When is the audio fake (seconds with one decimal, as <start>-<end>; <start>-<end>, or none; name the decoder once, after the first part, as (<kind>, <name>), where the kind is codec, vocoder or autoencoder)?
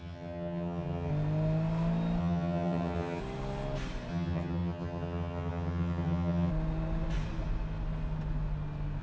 0.0-1.1 (vocoder, HiFi-GAN); 2.2-3.2; 4.1-6.5